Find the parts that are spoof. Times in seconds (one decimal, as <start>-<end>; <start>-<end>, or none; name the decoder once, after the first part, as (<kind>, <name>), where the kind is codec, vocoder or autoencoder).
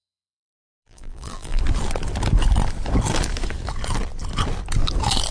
0.0-1.6 (vocoder, BigVGAN v2)